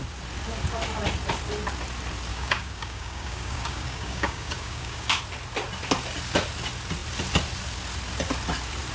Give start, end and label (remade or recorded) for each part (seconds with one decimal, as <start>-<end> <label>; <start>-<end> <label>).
0.0-2.3 recorded; 2.3-5.2 remade; 5.2-8.9 recorded